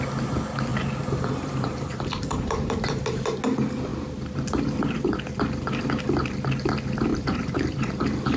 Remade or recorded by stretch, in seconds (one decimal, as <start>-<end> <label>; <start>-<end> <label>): 0.0-0.7 recorded; 0.7-3.0 remade; 3.0-7.1 recorded; 7.1-7.9 remade; 7.9-8.4 recorded